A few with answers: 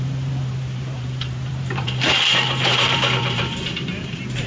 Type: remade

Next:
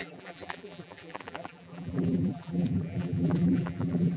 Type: remade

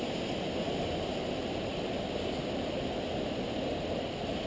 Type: recorded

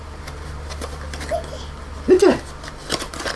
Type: recorded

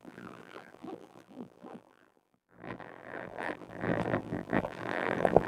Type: remade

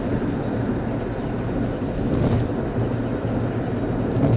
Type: recorded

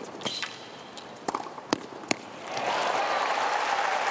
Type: remade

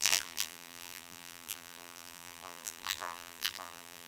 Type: remade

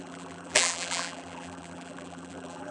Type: remade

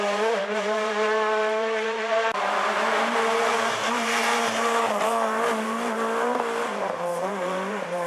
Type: remade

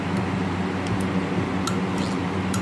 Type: recorded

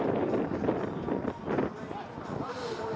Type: recorded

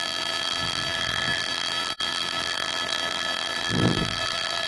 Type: remade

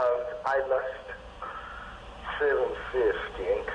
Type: recorded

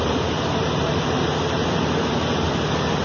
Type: remade